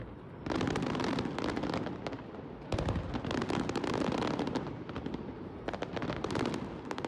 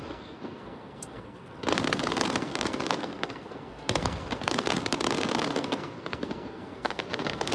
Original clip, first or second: first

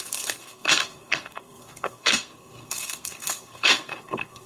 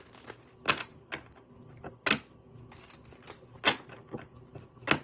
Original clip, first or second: second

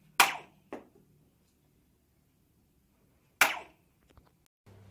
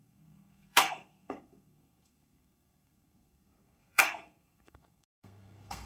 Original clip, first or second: first